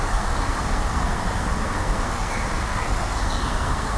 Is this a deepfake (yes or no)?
yes